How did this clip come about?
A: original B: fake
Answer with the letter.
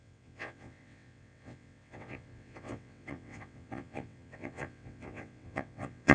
B